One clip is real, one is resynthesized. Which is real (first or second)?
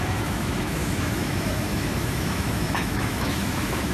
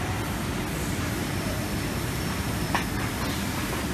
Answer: second